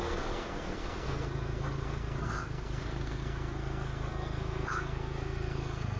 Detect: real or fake fake